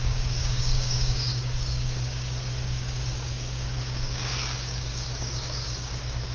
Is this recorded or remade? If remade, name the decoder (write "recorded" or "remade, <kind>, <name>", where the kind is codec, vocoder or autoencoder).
remade, codec, DAC